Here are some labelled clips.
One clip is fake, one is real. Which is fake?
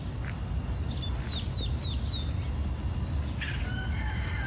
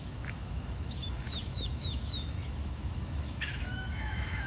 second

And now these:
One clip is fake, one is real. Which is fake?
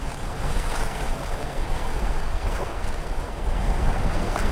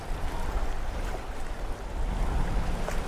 first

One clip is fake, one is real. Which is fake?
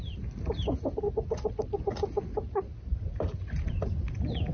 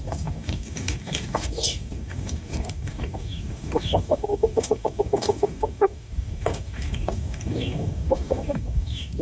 second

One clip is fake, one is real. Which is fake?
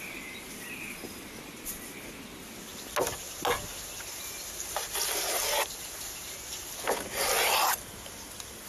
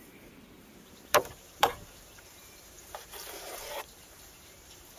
second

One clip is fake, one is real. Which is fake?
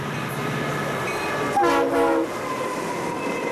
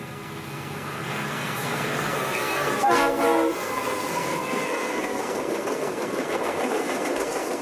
second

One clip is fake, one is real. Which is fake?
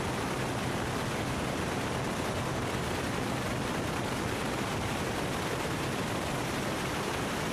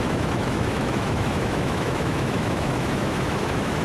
second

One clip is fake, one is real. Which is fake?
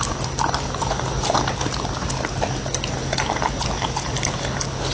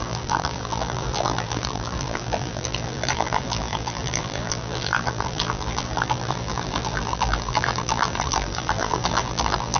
second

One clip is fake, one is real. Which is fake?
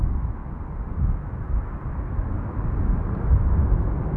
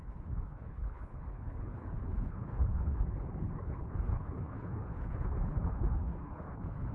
second